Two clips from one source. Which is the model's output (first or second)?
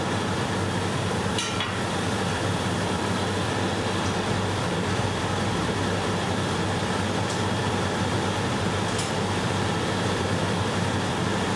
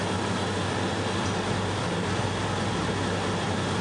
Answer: first